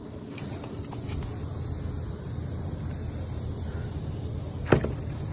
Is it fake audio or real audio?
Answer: real